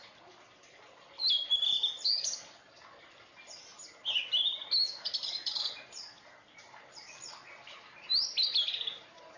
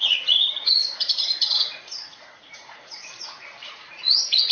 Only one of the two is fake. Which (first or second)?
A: second